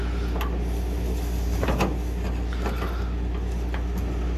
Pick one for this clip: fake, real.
real